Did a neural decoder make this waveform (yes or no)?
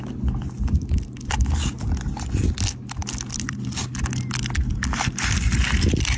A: no